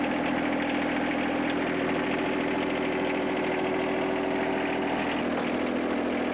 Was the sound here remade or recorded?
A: recorded